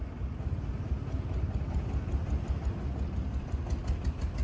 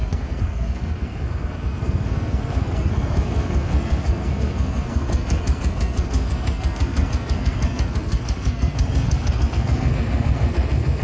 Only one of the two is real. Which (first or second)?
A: first